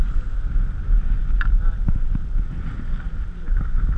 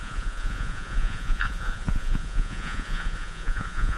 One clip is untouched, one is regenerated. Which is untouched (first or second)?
first